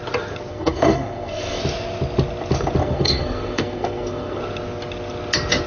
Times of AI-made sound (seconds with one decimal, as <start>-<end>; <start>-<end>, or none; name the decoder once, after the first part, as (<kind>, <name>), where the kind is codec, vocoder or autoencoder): 0.5-1.6 (codec, SNAC); 2.8-4.4